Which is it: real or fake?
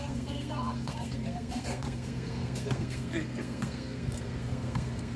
fake